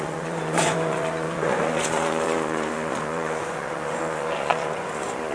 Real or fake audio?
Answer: fake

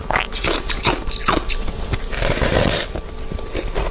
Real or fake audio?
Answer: real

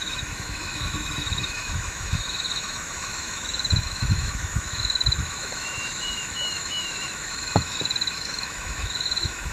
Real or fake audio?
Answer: fake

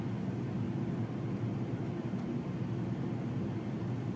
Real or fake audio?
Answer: real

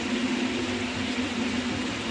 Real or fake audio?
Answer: real